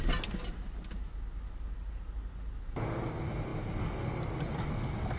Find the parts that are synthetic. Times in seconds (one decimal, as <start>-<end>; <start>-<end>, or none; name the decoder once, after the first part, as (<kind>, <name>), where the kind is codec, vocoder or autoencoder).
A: none